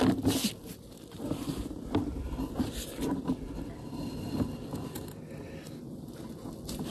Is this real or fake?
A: real